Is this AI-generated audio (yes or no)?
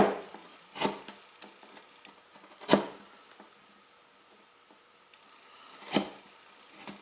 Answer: no